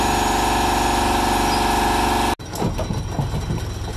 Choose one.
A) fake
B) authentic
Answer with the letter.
B